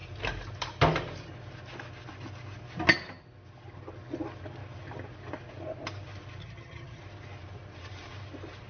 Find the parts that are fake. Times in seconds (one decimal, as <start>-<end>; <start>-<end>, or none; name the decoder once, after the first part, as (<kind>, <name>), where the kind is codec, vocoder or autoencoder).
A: 6.4-7.0 (vocoder, HiFi-GAN)